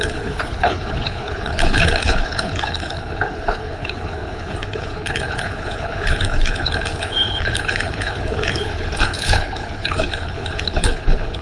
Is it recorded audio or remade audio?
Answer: remade